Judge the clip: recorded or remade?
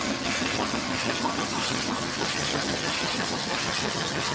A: remade